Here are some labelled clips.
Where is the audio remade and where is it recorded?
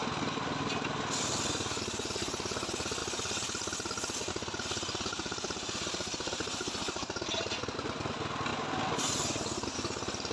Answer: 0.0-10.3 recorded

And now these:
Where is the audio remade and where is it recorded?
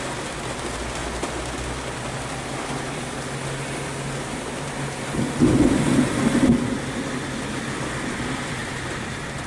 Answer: 0.0-9.5 recorded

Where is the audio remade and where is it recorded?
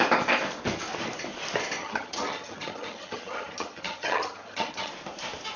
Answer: 0.0-1.8 recorded; 1.8-4.9 remade; 4.9-5.6 recorded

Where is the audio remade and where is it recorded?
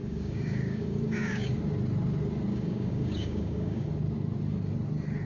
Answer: 0.0-1.6 remade; 1.6-2.5 recorded; 2.5-3.9 remade; 3.9-5.3 recorded